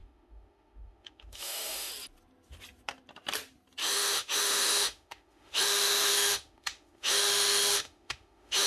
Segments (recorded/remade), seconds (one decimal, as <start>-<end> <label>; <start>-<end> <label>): 0.0-1.9 remade; 1.9-3.8 recorded; 3.8-8.7 remade